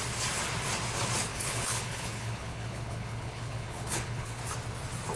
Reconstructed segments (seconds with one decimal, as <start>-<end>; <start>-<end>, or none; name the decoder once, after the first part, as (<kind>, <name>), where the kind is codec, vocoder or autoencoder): 1.3-4.4 (codec, HILCodec)